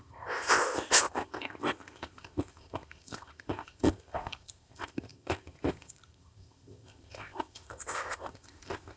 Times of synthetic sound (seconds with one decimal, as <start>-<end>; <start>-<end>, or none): 0.0-9.0